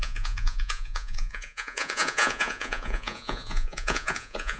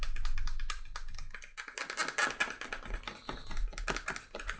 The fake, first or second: first